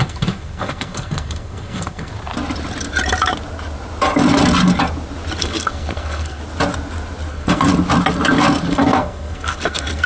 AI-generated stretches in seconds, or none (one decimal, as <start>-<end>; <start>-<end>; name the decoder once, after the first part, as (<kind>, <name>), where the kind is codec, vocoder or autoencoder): 0.0-2.1 (codec, SNAC); 5.4-6.4; 7.3-7.7; 8.7-10.1